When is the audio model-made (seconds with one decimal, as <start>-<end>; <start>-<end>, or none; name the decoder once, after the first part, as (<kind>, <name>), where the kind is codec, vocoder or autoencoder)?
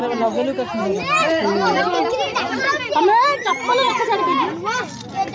none